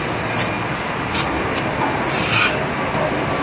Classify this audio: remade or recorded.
recorded